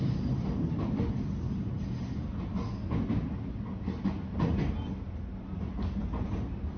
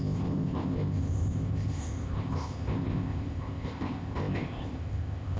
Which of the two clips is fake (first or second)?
second